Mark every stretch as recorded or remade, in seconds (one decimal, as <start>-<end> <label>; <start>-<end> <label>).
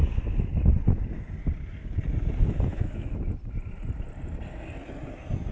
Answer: 0.0-2.7 recorded; 2.7-3.3 remade; 3.3-5.5 recorded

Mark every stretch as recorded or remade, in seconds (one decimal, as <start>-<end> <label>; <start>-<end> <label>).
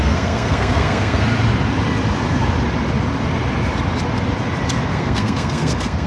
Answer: 0.0-1.2 remade; 1.2-4.9 recorded; 4.9-6.1 remade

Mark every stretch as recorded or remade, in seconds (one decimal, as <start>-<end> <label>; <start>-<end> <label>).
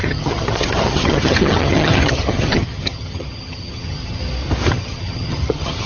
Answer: 0.0-4.2 remade; 4.2-4.7 recorded; 4.7-5.9 remade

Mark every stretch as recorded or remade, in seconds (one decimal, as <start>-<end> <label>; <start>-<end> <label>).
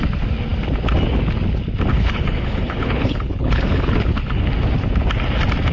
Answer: 0.0-1.9 recorded; 1.9-4.5 remade; 4.5-5.7 recorded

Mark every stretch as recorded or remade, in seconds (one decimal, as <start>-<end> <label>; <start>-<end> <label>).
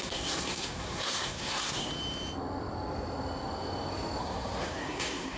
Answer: 0.0-1.9 remade; 1.9-4.2 recorded; 4.2-5.4 remade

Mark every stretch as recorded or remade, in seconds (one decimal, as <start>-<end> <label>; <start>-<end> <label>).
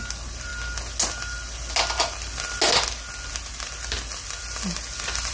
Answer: 0.0-5.3 recorded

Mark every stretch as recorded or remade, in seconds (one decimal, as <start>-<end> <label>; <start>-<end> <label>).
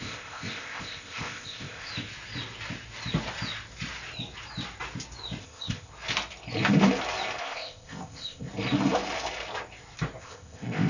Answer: 0.0-1.9 remade; 1.9-5.4 recorded; 5.4-5.9 remade; 5.9-7.4 recorded; 7.4-8.5 remade; 8.5-10.2 recorded; 10.2-10.9 remade